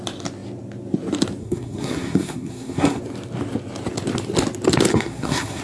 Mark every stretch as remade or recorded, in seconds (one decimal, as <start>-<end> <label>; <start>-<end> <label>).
0.0-1.4 recorded; 1.4-3.0 remade; 3.0-4.9 recorded; 4.9-5.6 remade